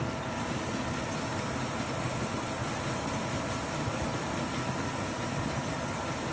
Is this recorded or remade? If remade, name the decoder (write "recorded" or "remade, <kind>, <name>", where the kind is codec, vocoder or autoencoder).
recorded